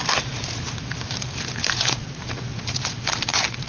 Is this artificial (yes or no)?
yes